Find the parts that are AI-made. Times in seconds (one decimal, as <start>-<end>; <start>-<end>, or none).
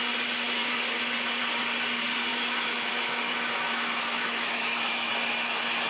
2.3-5.1